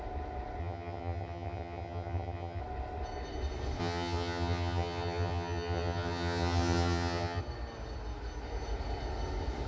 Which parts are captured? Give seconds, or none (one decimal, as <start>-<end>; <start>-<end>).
0.0-0.6; 2.6-3.8; 7.4-9.7